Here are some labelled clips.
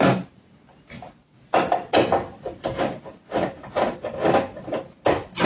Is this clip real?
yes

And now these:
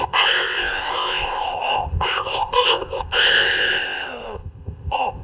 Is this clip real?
no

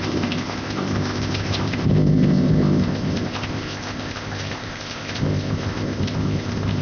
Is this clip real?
no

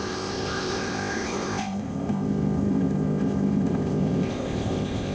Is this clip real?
no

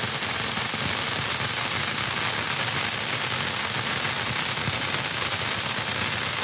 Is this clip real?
yes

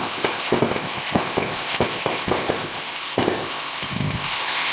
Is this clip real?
no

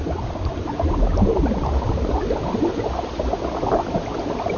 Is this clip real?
yes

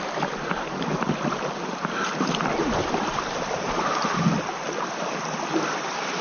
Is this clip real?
yes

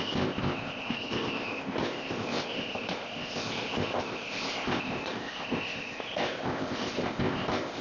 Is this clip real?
no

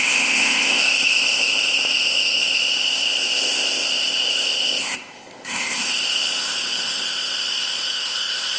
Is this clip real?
no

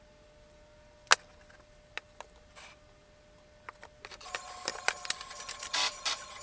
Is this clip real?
yes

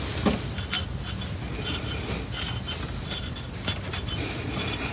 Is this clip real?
yes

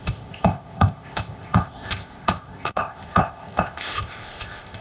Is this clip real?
no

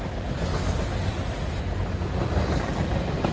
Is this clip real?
yes